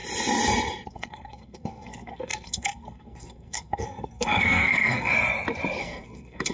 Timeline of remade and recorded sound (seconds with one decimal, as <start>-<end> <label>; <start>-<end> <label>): 0.0-0.9 recorded; 0.9-5.1 remade; 5.1-5.8 recorded; 5.8-6.5 remade